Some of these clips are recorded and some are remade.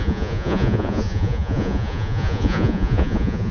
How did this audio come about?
remade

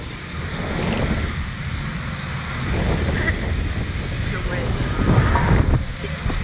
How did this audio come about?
recorded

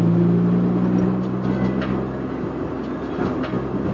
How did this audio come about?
recorded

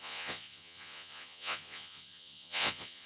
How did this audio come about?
remade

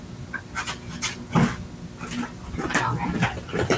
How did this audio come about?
recorded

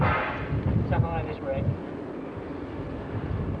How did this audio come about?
recorded